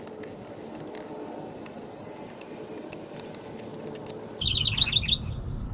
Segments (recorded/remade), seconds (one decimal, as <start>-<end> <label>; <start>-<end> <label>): 0.0-5.7 recorded